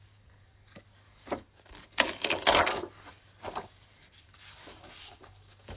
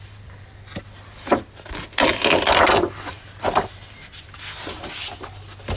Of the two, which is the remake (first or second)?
first